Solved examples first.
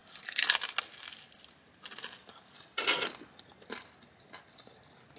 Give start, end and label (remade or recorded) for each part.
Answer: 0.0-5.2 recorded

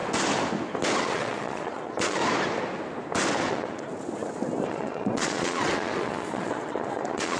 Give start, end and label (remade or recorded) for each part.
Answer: 0.0-1.0 recorded; 1.0-2.2 remade; 2.2-3.5 recorded; 3.5-3.9 remade; 3.9-4.7 recorded; 4.7-7.4 remade

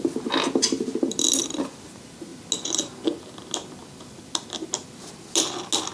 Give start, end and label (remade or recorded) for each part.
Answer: 0.0-5.9 recorded

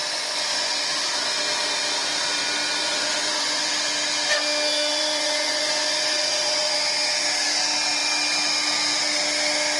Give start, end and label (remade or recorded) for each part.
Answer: 0.0-0.7 remade; 0.7-2.8 recorded; 2.8-3.7 remade; 3.7-4.9 recorded; 4.9-6.7 remade; 6.7-9.8 recorded

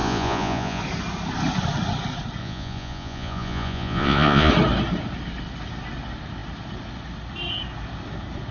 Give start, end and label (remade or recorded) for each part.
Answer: 0.0-0.8 remade; 0.8-2.4 recorded; 2.4-4.5 remade; 4.5-8.5 recorded